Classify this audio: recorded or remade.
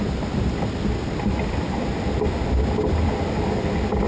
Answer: recorded